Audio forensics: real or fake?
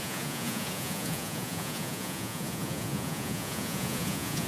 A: fake